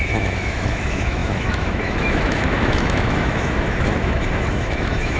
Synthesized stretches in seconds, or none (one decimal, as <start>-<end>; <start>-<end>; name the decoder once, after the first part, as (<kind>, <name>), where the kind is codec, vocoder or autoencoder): 0.0-5.2 (autoencoder, DAC-VAE)